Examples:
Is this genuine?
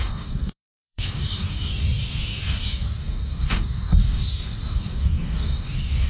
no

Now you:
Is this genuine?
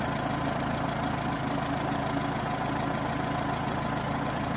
yes